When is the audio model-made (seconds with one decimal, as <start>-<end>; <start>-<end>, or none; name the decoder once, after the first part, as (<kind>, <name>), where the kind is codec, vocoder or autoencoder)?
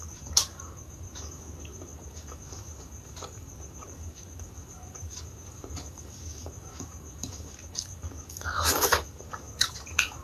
0.0-10.2 (codec, DAC)